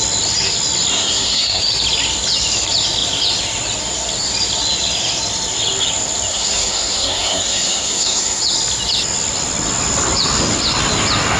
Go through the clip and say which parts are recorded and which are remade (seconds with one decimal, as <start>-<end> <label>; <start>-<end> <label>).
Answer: 0.0-0.9 recorded; 0.9-1.6 remade; 1.6-6.3 recorded; 6.3-8.4 remade; 8.4-11.4 recorded